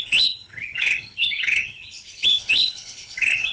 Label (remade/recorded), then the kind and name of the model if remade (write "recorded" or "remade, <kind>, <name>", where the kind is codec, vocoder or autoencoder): remade, codec, HILCodec